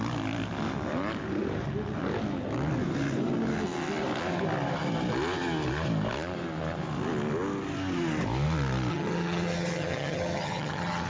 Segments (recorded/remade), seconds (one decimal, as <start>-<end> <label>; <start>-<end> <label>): 0.0-8.9 recorded; 8.9-11.1 remade